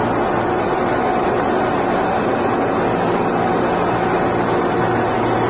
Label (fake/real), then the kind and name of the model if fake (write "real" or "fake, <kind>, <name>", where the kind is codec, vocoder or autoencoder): real